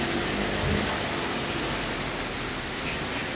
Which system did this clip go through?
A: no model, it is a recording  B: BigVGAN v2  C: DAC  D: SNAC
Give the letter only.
A